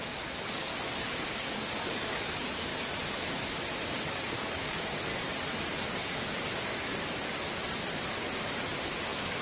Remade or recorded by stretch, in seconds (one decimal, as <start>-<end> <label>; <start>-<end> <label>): 0.0-0.7 remade; 0.7-1.3 recorded; 1.3-2.7 remade; 2.7-3.9 recorded; 3.9-5.1 remade; 5.1-9.0 recorded; 9.0-9.4 remade